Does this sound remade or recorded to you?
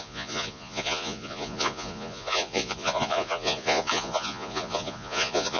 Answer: remade